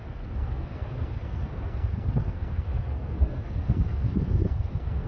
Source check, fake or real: fake